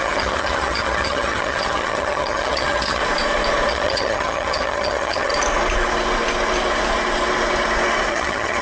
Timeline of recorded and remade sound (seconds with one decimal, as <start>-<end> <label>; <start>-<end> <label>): 0.0-3.0 remade; 3.0-3.7 recorded; 3.7-5.3 remade; 5.3-8.1 recorded; 8.1-8.6 remade